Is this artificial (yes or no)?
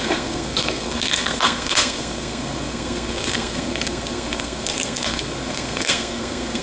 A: yes